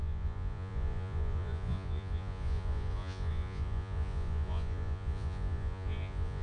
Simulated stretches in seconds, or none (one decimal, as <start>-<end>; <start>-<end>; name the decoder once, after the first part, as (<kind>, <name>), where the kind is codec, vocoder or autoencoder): 0.0-6.4 (vocoder, Vocos)